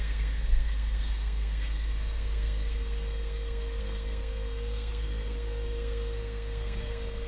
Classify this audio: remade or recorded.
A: remade